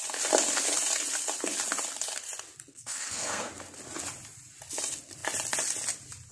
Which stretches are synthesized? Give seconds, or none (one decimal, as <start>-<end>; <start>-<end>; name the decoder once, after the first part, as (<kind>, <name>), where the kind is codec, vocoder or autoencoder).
2.7-3.5 (codec, SNAC)